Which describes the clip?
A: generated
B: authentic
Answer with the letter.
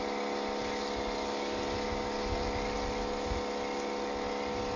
B